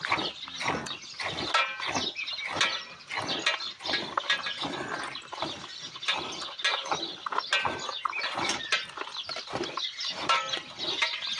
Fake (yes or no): no